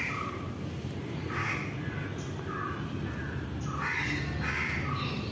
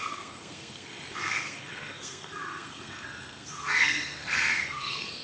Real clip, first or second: first